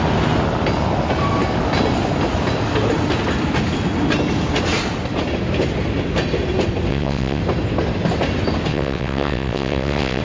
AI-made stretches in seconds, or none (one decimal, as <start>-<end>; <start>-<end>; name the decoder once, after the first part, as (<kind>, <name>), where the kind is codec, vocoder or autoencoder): 6.9-7.4 (vocoder, WaveNeXt); 8.7-10.2